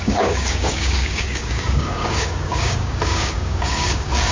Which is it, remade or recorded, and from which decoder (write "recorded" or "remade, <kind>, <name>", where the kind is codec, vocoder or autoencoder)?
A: remade, codec, DAC